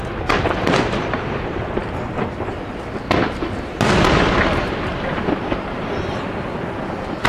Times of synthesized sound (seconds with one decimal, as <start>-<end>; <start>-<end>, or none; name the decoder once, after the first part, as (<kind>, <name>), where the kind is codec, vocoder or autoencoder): none